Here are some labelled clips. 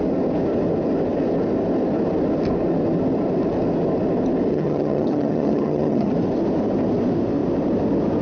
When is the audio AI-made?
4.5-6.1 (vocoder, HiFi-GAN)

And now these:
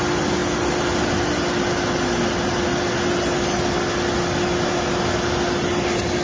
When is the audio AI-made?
none

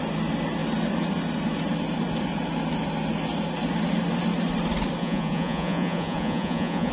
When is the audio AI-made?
5.0-6.9 (vocoder, Vocos)

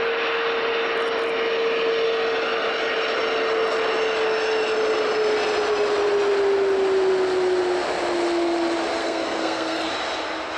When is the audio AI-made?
9.0-9.9 (codec, SNAC)

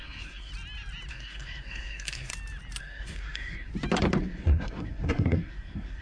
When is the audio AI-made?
0.0-0.5 (codec, SNAC); 1.1-2.3; 2.8-3.7; 4.2-6.0

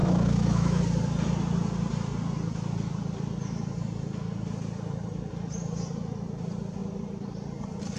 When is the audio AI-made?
0.0-0.8 (autoencoder, DAC-VAE)

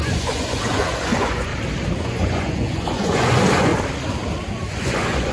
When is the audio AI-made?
0.0-1.5 (vocoder, Vocos); 2.0-3.7; 4.7-5.3

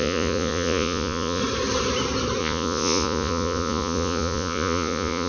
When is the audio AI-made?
0.0-1.4 (vocoder, Vocos); 2.4-5.3